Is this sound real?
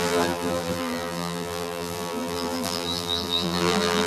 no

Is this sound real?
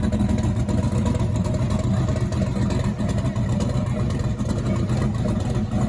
yes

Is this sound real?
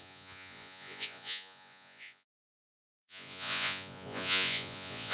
no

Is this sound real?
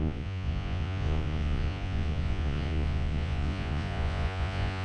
no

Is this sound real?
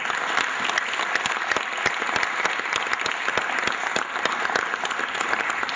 yes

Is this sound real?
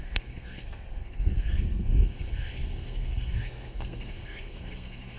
no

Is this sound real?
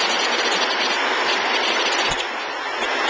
yes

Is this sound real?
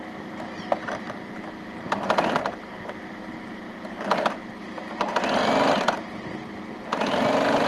yes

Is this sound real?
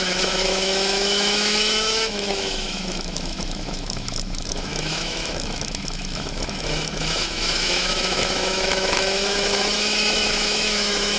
no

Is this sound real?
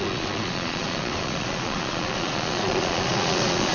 no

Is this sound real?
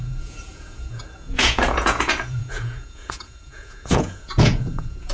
no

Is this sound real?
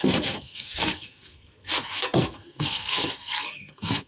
no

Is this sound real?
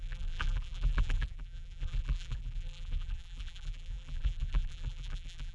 no